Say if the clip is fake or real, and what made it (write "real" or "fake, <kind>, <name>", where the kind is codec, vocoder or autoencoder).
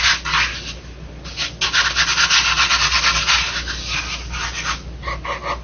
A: real